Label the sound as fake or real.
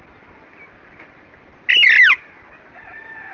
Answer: real